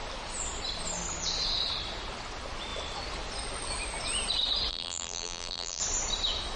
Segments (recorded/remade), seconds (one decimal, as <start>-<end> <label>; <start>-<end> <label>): 0.0-4.7 recorded; 4.7-5.8 remade; 5.8-6.6 recorded